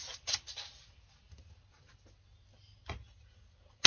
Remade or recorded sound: recorded